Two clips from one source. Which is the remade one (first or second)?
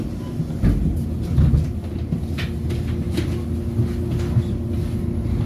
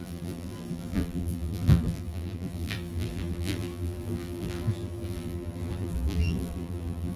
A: second